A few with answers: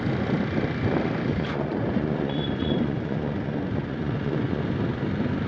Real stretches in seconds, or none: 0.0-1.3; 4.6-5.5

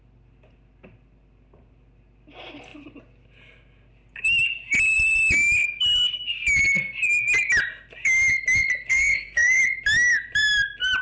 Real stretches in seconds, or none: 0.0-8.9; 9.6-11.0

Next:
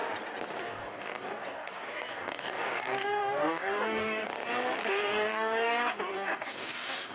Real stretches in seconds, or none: 0.0-0.6; 4.3-4.9

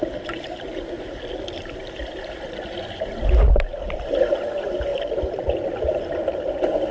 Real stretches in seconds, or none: 0.0-4.9; 5.4-6.9